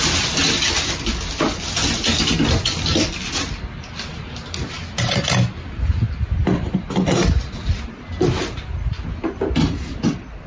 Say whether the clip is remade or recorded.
recorded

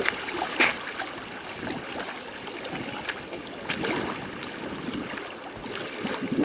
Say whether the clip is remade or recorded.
recorded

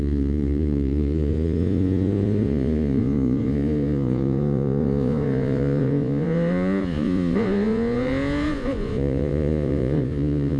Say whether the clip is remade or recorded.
remade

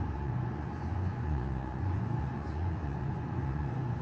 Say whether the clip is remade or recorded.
remade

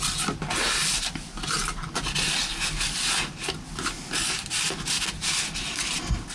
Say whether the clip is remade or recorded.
recorded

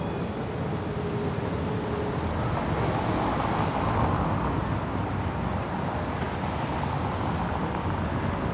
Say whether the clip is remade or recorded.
recorded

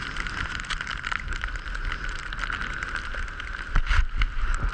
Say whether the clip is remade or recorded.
recorded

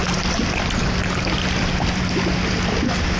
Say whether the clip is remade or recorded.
recorded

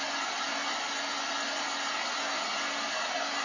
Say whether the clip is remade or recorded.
recorded